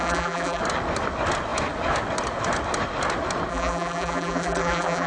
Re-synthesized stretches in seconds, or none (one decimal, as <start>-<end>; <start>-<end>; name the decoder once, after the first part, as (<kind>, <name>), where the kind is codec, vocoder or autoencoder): 0.0-0.6 (vocoder, BigVGAN v2); 3.5-5.1